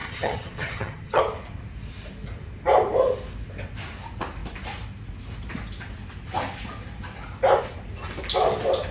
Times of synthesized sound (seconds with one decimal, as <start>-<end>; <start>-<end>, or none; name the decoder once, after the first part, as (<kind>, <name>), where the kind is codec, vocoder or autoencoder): 0.0-1.2 (vocoder, HiFi-GAN)